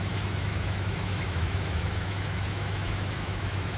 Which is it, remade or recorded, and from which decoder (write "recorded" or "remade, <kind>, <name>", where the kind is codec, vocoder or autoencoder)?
remade, autoencoder, DAC-VAE